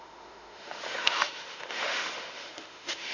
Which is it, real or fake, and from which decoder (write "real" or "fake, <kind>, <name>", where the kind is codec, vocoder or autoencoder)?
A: fake, autoencoder, DAC-VAE